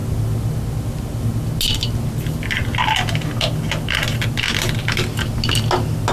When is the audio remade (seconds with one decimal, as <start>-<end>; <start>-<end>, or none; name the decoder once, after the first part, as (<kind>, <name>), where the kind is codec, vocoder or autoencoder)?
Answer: none